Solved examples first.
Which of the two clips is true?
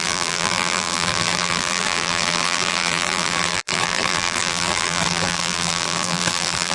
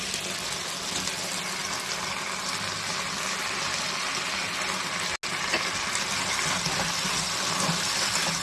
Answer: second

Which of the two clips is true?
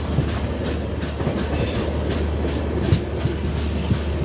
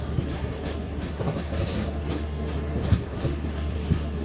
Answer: first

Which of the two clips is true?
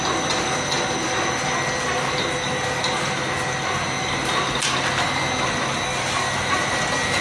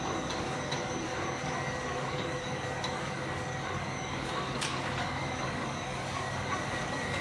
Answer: first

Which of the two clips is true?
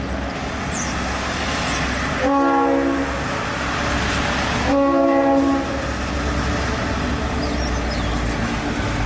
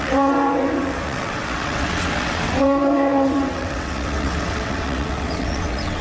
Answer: first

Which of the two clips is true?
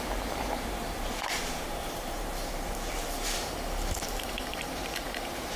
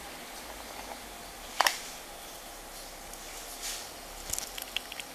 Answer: second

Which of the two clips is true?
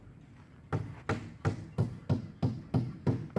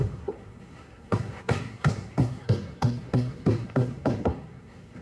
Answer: first